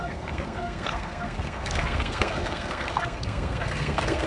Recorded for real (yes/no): no